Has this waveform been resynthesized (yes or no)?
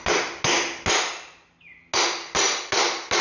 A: no